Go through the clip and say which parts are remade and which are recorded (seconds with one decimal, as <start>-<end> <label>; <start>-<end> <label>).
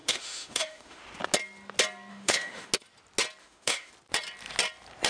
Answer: 0.0-1.0 remade; 1.0-2.1 recorded; 2.1-2.7 remade; 2.7-3.4 recorded; 3.4-3.9 remade; 3.9-5.1 recorded